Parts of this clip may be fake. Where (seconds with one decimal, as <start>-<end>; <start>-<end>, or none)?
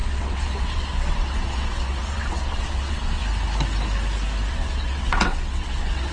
0.0-3.2; 4.5-6.1